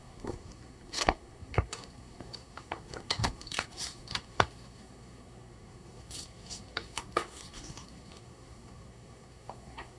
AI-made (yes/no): yes